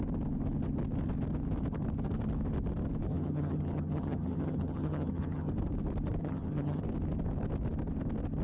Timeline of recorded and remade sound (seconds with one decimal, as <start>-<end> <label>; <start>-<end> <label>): 0.0-3.1 recorded; 3.1-5.5 remade; 5.5-6.2 recorded; 6.2-6.8 remade; 6.8-8.4 recorded